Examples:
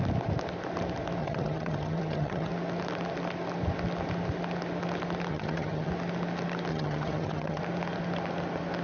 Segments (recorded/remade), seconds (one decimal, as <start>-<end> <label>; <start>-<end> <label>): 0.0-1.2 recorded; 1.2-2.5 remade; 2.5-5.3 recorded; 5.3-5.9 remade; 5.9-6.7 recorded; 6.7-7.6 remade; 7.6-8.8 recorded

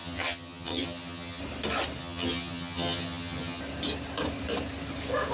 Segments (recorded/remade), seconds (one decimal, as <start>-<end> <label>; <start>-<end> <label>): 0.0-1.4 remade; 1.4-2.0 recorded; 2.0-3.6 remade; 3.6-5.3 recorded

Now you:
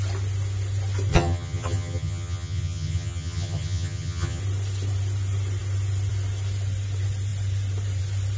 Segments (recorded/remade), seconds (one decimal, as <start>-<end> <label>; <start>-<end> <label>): 0.0-1.1 recorded; 1.1-4.4 remade; 4.4-8.4 recorded